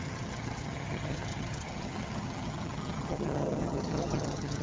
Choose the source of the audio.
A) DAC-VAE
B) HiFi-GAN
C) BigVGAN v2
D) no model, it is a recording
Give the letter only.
B